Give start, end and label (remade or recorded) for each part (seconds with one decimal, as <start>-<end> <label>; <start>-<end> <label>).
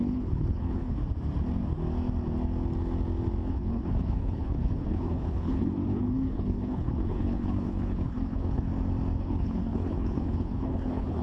0.0-1.0 remade; 1.0-3.5 recorded; 3.5-8.7 remade; 8.7-9.2 recorded; 9.2-11.2 remade